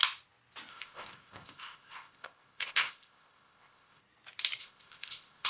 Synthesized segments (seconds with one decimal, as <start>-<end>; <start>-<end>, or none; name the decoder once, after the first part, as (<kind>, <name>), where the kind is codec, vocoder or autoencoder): 0.7-4.0 (codec, ZipCodec); 4.6-5.5